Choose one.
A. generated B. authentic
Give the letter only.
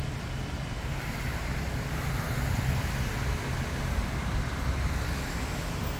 B